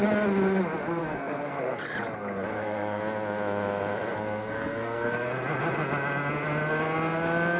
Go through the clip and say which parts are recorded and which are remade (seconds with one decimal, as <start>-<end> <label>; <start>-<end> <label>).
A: 0.0-1.0 recorded; 1.0-1.8 remade; 1.8-2.5 recorded; 2.5-3.0 remade; 3.0-4.1 recorded; 4.1-5.3 remade; 5.3-7.6 recorded